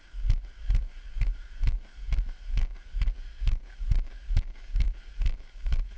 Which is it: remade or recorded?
remade